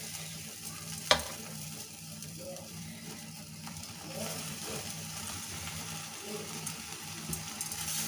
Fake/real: fake